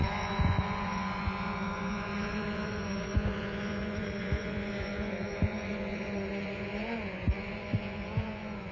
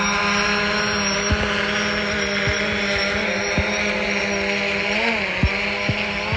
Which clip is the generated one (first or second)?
first